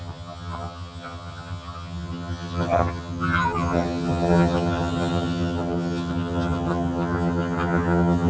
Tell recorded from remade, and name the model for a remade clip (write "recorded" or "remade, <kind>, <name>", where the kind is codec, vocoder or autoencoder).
remade, vocoder, HiFi-GAN